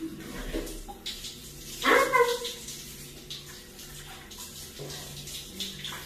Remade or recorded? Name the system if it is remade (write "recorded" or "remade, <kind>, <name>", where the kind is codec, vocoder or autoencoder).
recorded